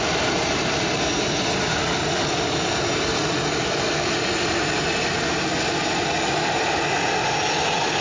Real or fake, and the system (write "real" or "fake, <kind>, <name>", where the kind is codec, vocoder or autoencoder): real